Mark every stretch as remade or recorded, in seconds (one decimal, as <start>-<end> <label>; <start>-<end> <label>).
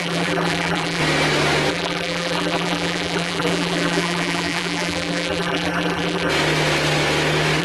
0.0-1.0 remade; 1.0-1.7 recorded; 1.7-6.3 remade; 6.3-7.6 recorded